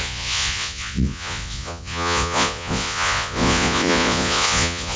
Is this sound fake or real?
fake